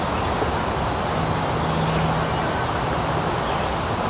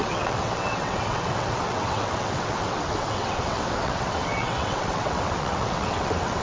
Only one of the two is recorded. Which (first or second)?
first